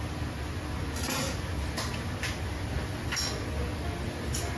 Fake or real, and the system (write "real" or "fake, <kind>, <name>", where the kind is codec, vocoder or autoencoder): real